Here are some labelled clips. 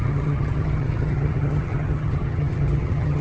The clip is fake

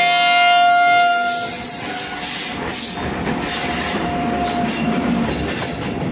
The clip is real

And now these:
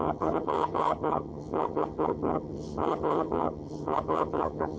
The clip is fake